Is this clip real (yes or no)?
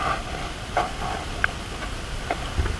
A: yes